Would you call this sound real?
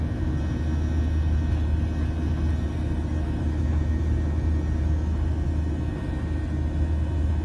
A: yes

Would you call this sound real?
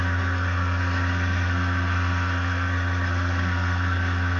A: no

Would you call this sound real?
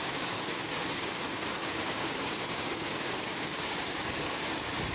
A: no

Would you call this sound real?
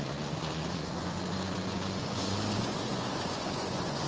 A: no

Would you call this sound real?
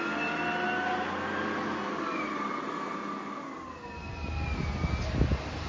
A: yes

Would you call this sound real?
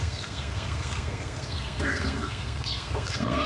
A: no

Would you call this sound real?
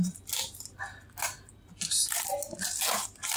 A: no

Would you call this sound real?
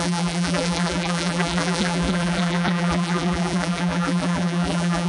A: no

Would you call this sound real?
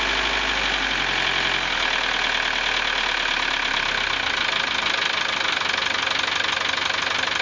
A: yes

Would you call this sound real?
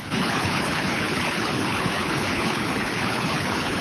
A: no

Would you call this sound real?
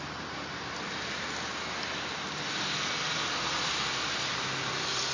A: yes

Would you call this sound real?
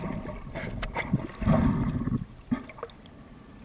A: yes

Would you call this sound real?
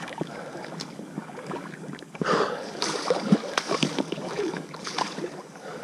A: no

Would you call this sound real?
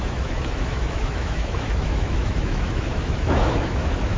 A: no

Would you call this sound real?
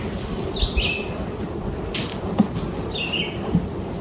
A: yes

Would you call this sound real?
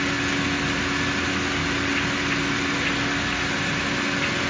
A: yes